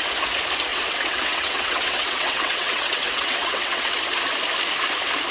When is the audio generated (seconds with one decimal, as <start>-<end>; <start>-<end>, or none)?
0.7-3.9